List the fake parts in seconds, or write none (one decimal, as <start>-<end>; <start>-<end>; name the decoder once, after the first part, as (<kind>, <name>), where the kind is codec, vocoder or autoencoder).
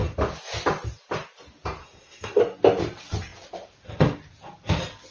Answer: 1.8-2.4 (codec, SNAC)